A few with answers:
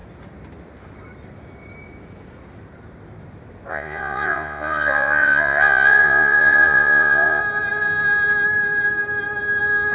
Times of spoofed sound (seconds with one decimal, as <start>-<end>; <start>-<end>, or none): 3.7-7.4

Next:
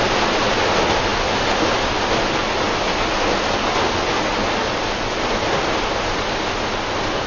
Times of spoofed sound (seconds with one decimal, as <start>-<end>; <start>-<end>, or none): none

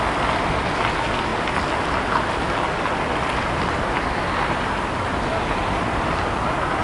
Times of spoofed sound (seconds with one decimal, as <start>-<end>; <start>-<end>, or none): none

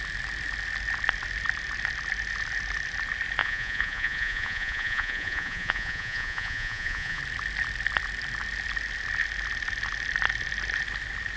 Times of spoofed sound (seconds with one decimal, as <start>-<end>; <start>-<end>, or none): 3.4-7.2

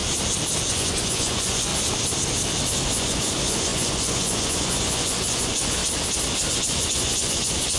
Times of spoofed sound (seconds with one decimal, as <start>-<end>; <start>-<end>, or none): 0.7-1.7; 2.9-5.8; 6.5-7.8